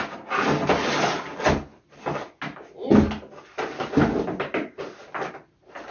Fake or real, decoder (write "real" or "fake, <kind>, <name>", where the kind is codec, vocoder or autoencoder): real